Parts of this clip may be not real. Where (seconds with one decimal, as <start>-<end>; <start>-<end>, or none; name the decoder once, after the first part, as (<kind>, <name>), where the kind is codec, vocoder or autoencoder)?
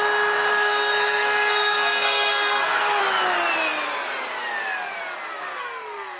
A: 0.5-3.0 (codec, SNAC)